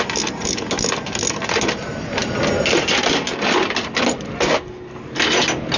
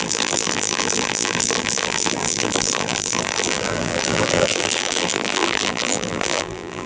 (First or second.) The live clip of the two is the first